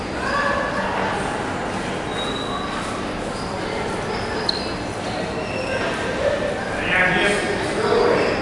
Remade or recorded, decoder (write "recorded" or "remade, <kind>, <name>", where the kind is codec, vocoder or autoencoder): recorded